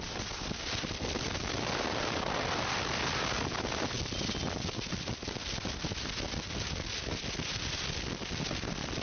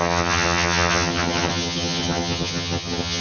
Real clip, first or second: first